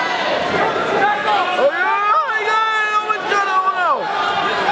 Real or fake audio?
real